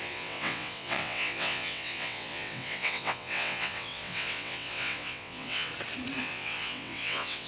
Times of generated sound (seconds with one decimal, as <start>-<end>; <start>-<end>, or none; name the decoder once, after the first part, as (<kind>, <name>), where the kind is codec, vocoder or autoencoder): 0.0-5.7 (vocoder, WaveNeXt); 6.2-7.5